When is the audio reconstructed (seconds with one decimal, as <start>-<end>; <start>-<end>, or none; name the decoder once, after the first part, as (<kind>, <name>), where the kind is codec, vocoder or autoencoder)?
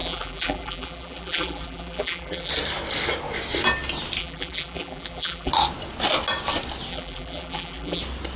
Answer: 0.0-2.5 (vocoder, BigVGAN v2); 4.2-5.5; 6.9-8.0